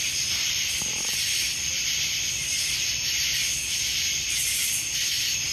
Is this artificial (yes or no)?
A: no